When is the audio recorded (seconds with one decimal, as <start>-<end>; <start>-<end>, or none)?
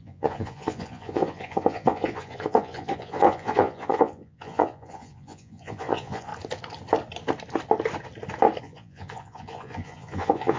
6.3-8.6